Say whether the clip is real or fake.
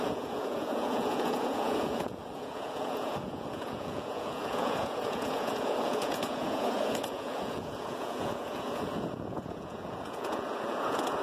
fake